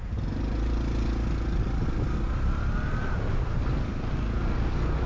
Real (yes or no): yes